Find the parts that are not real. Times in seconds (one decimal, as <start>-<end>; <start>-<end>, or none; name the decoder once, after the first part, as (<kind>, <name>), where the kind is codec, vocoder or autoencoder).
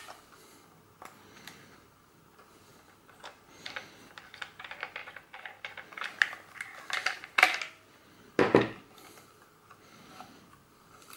2.7-4.0 (vocoder, BigVGAN v2); 5.0-5.7; 7.0-8.1